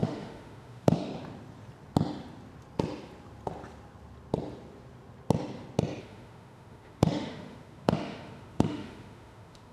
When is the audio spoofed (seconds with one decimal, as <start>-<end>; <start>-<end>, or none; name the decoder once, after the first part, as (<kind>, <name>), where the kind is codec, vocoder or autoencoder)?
0.0-1.1 (autoencoder, DAC-VAE); 6.0-9.7